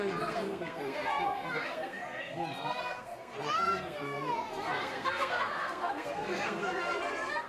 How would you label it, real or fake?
fake